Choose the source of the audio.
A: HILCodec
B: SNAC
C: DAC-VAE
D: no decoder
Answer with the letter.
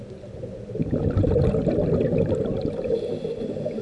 D